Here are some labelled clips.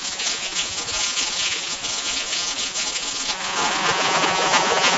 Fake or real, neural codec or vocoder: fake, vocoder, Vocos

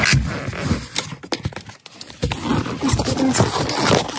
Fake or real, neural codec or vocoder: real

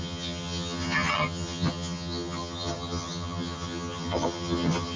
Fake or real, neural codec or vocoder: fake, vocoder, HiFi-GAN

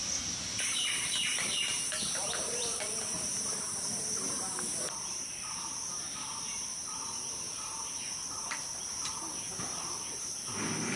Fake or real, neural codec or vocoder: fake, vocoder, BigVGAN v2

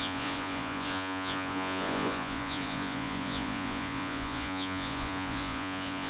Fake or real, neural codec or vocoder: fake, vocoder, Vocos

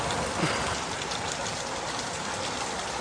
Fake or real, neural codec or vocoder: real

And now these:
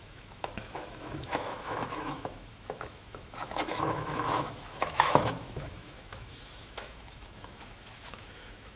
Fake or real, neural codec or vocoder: fake, autoencoder, DAC-VAE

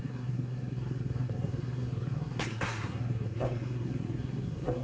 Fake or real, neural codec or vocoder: fake, codec, SNAC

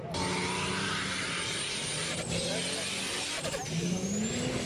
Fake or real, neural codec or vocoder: real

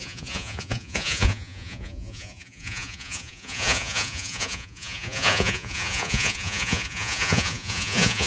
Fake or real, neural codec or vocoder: fake, vocoder, Vocos